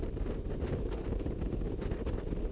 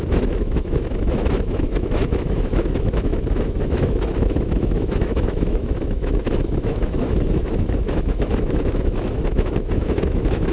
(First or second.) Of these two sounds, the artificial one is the second